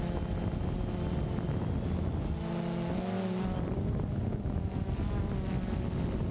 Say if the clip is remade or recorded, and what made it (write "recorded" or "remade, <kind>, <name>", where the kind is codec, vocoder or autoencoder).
recorded